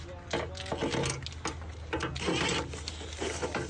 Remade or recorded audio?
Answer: recorded